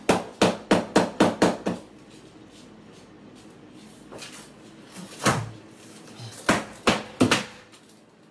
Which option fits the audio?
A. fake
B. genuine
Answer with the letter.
B